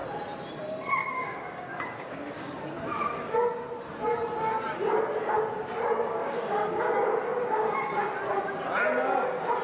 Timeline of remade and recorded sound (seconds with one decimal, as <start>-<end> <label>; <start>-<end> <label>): 0.0-1.0 recorded; 1.0-2.5 remade; 2.5-6.2 recorded; 6.2-6.8 remade; 6.8-9.6 recorded